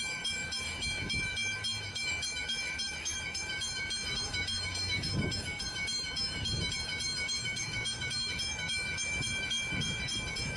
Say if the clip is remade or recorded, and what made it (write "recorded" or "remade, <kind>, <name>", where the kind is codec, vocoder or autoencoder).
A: remade, autoencoder, DAC-VAE